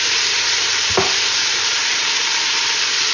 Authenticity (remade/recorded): recorded